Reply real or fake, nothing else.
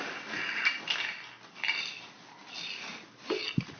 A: real